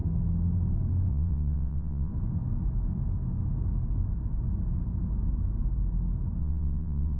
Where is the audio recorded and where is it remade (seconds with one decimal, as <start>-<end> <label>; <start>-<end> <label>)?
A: 0.0-1.1 recorded; 1.1-2.1 remade; 2.1-6.4 recorded; 6.4-7.2 remade